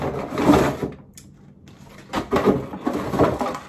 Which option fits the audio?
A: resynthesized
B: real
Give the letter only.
B